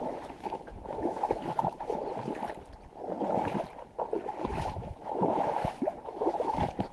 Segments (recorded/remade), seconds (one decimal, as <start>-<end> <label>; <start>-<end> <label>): 0.0-2.0 remade; 2.0-4.5 recorded; 4.5-6.9 remade